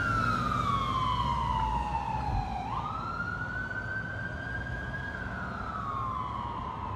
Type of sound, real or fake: real